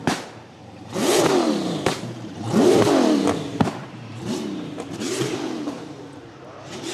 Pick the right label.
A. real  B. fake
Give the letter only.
B